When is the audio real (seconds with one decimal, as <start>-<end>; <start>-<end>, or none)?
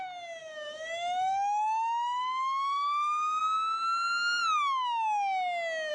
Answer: 0.0-0.4; 3.4-5.9